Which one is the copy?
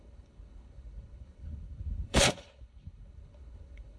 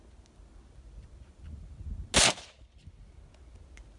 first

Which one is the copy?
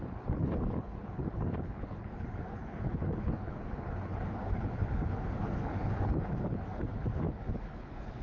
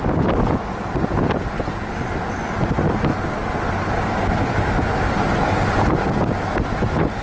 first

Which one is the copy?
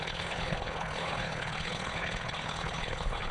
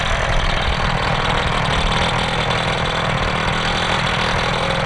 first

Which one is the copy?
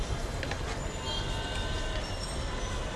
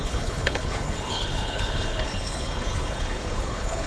second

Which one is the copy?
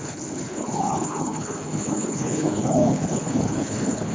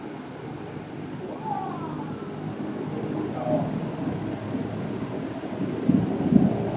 first